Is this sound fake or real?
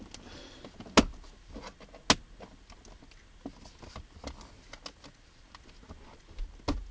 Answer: real